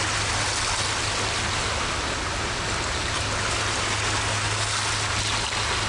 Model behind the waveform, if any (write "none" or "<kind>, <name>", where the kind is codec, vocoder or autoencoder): none